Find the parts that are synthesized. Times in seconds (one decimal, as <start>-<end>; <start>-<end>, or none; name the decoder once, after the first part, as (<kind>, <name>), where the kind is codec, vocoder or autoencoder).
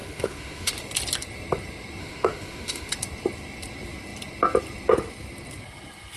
0.0-0.7 (autoencoder, DAC-VAE); 2.0-2.9